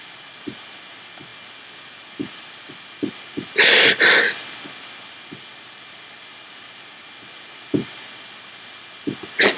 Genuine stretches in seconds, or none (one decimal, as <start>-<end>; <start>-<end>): 0.0-9.6